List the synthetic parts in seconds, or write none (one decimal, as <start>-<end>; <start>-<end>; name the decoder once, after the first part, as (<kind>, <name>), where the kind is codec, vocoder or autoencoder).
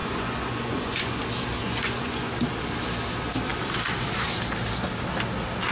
0.0-1.2 (vocoder, Vocos); 1.6-2.3